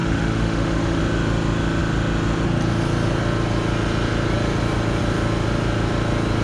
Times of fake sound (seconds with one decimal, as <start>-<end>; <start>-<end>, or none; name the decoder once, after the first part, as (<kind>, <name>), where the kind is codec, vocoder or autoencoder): 0.0-1.0 (autoencoder, DAC-VAE)